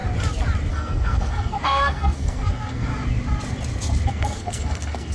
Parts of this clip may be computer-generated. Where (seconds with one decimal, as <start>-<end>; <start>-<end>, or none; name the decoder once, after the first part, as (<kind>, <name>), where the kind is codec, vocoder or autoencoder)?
0.7-2.9 (codec, SNAC); 4.1-5.1